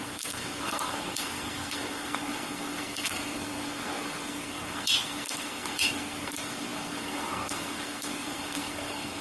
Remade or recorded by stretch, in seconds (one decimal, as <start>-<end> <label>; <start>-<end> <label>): 0.0-9.2 remade